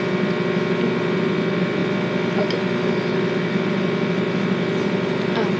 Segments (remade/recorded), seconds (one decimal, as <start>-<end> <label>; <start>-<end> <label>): 0.0-5.6 recorded